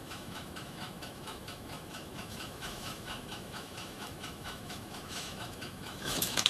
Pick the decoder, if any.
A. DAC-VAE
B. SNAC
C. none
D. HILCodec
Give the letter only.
A